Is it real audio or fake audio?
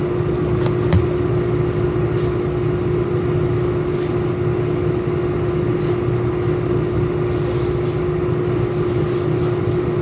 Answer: real